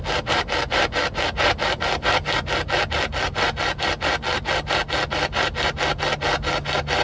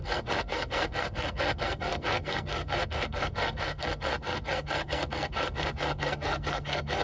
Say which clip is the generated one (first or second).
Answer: second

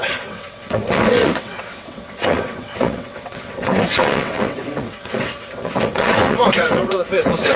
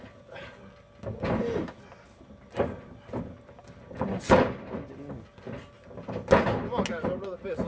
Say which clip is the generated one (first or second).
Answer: first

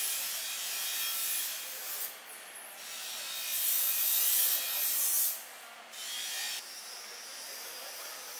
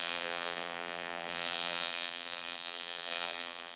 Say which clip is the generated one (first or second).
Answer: second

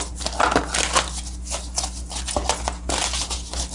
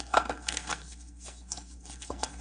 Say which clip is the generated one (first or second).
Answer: second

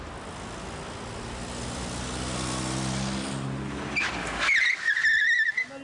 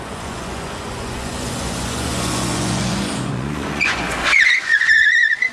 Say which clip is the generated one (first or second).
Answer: second